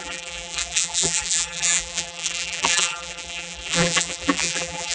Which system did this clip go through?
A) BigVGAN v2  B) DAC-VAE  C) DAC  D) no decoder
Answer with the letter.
A